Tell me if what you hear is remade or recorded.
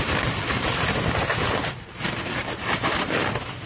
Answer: remade